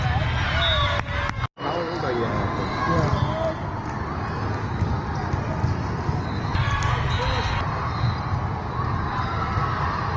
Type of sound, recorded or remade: recorded